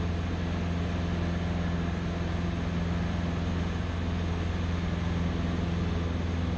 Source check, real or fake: real